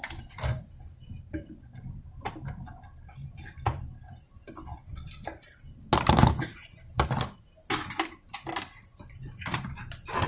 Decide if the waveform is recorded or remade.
recorded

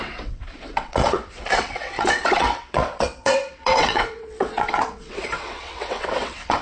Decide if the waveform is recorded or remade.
remade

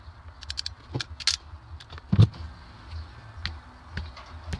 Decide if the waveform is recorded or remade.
recorded